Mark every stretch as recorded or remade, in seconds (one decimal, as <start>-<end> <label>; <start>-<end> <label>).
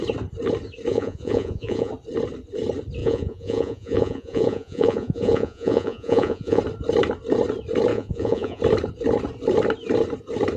0.0-0.9 recorded; 0.9-1.9 remade; 1.9-3.0 recorded; 3.0-6.6 remade; 6.6-7.9 recorded; 7.9-8.6 remade; 8.6-10.6 recorded